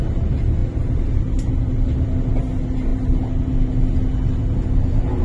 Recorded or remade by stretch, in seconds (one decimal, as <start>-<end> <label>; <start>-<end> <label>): 0.0-5.2 recorded